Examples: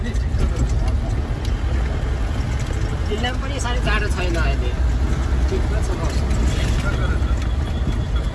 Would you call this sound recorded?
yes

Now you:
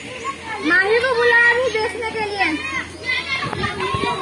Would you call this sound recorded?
yes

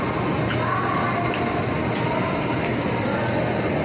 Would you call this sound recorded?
yes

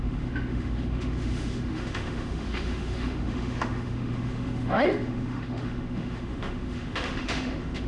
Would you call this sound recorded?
no